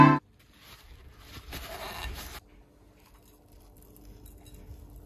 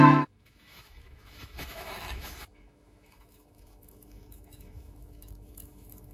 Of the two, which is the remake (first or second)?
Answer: second